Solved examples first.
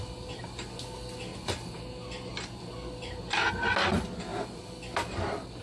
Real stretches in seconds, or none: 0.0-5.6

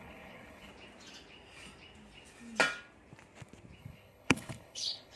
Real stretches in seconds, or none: 0.7-3.8

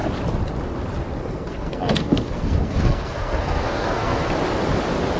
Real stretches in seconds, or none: 0.0-1.2; 4.3-5.2

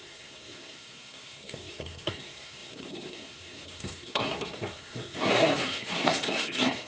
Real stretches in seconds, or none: none